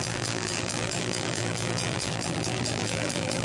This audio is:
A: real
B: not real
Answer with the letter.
B